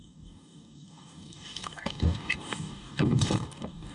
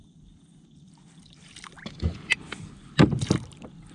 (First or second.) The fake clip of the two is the first